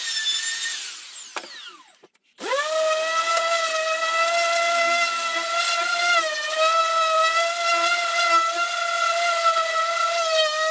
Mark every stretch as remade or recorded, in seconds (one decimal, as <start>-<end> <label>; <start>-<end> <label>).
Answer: 0.0-10.7 recorded